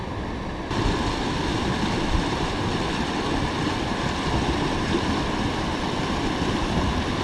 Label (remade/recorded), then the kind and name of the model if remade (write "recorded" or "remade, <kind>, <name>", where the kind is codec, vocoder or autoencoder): recorded